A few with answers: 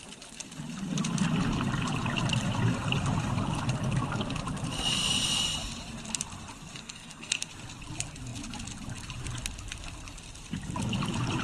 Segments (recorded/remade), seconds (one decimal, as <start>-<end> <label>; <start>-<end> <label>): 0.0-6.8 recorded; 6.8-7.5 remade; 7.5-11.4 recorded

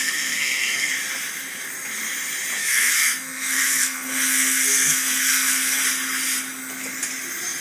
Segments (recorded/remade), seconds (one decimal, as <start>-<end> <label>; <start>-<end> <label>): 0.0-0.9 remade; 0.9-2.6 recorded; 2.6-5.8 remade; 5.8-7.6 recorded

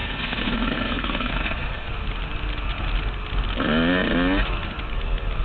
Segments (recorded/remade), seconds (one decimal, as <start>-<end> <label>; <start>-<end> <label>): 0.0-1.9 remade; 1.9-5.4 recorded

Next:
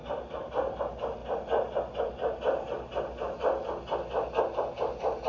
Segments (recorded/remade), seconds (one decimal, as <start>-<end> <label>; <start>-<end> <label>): 0.0-5.3 recorded

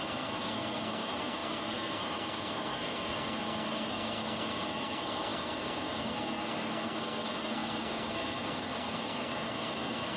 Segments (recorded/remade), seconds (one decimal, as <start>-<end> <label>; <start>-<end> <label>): 0.0-10.2 remade

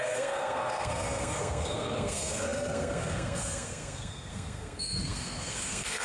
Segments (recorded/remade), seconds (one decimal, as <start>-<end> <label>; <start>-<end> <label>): 0.0-6.0 remade

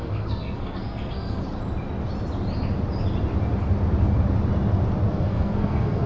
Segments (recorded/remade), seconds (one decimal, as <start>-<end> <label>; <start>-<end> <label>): 0.0-1.4 remade; 1.4-5.1 recorded; 5.1-6.1 remade